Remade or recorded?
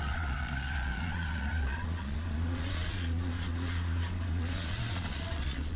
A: remade